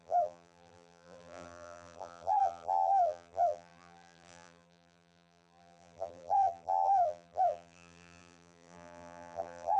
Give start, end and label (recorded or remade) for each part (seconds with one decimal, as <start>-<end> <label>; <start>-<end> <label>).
0.0-9.8 remade